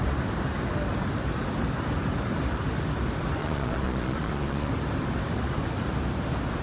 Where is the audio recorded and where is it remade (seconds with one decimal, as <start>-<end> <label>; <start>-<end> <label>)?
0.0-3.4 recorded; 3.4-4.7 remade; 4.7-6.6 recorded